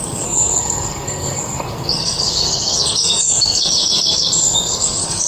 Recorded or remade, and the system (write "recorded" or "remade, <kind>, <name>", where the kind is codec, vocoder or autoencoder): remade, codec, SNAC